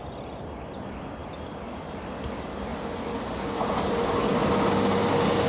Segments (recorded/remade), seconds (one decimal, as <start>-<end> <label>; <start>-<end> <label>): 0.0-5.5 recorded